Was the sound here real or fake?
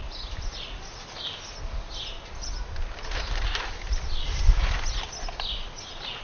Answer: real